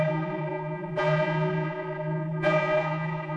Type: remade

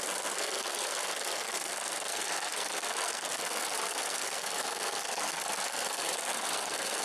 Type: remade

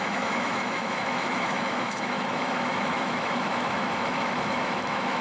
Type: remade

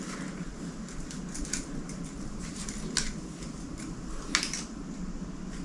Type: recorded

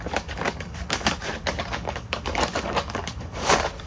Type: remade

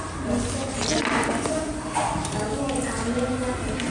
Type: recorded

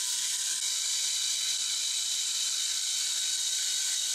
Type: recorded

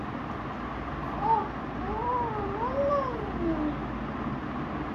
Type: recorded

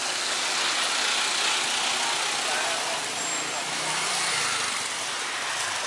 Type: recorded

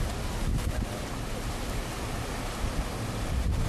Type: recorded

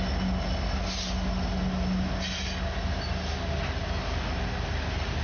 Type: recorded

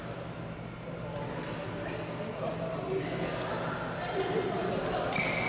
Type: recorded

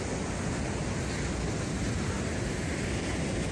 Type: recorded